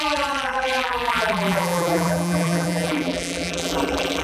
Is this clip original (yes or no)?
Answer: no